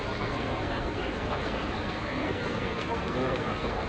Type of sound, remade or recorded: remade